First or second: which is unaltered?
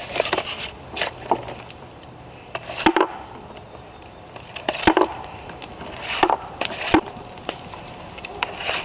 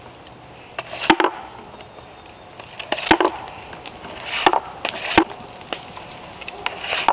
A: second